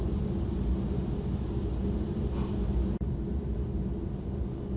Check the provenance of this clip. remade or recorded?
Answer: recorded